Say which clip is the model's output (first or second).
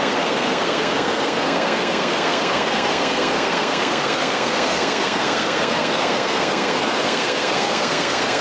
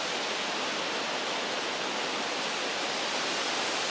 first